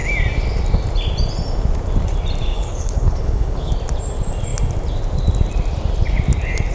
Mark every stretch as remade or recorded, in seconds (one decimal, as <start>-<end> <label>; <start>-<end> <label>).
0.0-2.5 recorded; 2.5-3.7 remade; 3.7-6.7 recorded